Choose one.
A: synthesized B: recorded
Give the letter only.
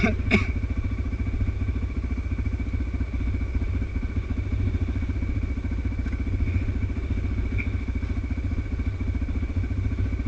B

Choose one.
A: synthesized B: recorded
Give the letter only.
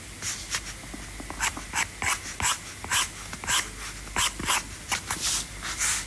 B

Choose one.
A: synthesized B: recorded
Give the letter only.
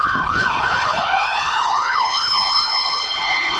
A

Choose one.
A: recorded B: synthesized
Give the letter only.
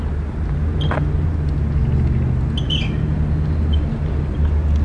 A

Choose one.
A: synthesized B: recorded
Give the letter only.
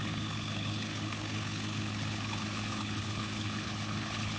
A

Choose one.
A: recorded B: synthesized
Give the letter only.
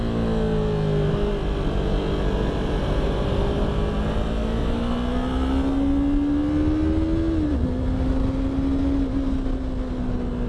A